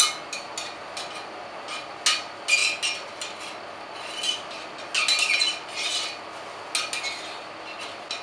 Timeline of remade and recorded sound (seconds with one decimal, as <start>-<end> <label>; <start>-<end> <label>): 0.0-8.2 recorded